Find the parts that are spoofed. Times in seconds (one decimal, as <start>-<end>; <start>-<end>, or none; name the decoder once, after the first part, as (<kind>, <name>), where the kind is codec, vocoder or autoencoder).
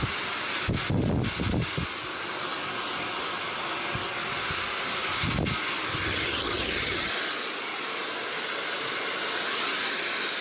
6.0-7.1 (vocoder, HiFi-GAN)